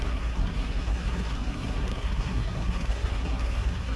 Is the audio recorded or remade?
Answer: remade